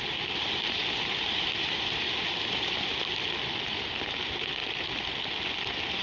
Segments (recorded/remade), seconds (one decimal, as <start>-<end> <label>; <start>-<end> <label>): 0.0-6.0 recorded